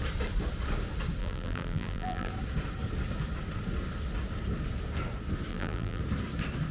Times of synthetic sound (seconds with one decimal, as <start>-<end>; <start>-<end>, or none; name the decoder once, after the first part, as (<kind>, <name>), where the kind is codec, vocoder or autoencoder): 1.2-2.3 (vocoder, BigVGAN v2); 5.5-6.0

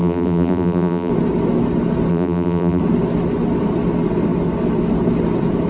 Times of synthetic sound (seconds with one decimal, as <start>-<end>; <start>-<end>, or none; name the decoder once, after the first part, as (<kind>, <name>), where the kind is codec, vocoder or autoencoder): 0.0-1.1 (vocoder, BigVGAN v2); 2.1-2.8